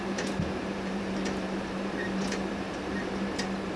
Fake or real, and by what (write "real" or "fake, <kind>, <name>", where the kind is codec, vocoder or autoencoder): fake, vocoder, BigVGAN v2